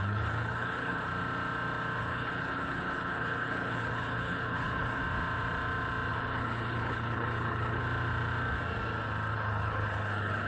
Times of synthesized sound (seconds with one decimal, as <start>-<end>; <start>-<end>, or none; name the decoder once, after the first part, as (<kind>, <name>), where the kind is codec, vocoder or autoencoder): 0.0-1.1 (codec, HILCodec); 2.0-5.0; 6.1-7.8; 9.3-10.5